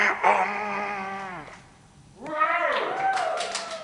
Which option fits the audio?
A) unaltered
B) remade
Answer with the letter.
A